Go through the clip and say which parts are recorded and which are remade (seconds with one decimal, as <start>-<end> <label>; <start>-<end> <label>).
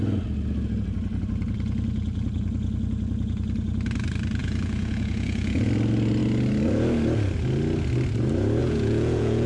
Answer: 0.0-4.4 recorded; 4.4-5.7 remade; 5.7-8.6 recorded; 8.6-9.5 remade